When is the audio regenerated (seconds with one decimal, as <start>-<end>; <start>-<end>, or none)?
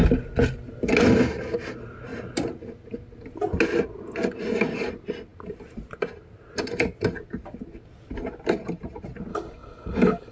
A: 9.3-10.3